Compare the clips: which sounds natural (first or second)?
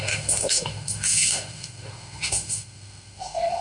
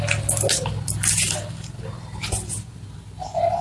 second